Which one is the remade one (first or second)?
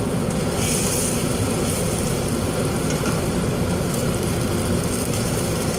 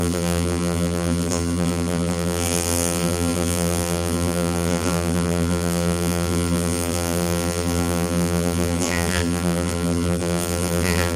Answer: second